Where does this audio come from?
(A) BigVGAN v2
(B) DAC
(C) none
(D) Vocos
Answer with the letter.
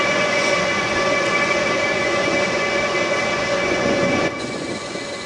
D